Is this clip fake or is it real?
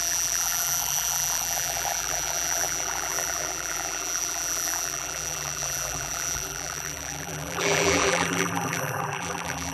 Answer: fake